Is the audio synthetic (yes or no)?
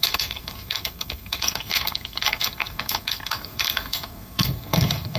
yes